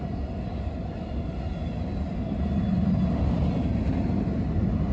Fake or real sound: real